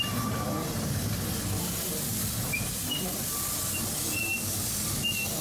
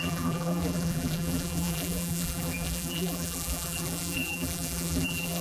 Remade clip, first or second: second